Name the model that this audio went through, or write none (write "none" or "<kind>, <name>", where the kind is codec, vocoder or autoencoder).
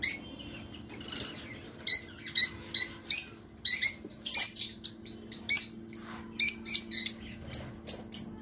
none